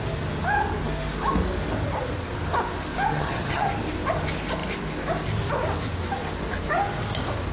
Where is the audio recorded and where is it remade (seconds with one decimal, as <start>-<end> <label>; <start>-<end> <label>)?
0.0-3.1 recorded; 3.1-3.7 remade; 3.7-7.5 recorded